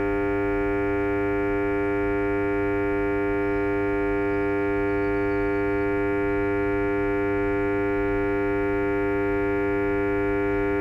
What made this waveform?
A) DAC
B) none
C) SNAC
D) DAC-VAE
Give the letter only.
B